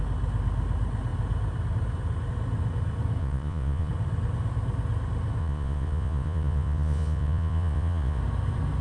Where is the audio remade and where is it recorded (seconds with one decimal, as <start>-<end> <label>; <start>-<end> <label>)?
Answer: 0.0-3.2 recorded; 3.2-3.9 remade; 3.9-5.4 recorded; 5.4-8.2 remade; 8.2-8.8 recorded